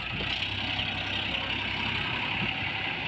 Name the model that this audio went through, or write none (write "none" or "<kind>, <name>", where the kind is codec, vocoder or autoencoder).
none